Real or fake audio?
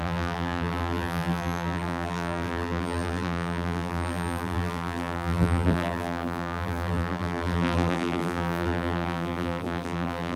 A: fake